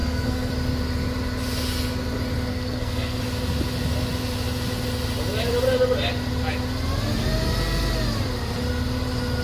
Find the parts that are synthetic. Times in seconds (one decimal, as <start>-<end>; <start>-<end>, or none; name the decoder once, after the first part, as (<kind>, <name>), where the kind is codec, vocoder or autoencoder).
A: 0.0-0.5 (codec, SNAC); 2.5-3.2